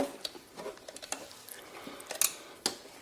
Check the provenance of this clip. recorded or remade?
recorded